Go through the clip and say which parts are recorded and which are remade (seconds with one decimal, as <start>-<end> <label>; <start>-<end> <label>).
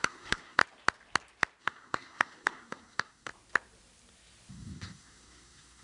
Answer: 0.0-0.6 remade; 0.6-1.6 recorded; 1.6-3.3 remade; 3.3-4.5 recorded; 4.5-5.8 remade